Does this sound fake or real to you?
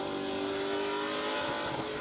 real